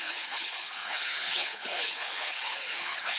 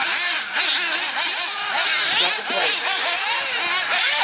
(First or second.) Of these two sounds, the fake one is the first